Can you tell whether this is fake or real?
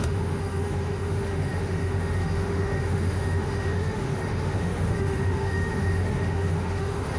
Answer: fake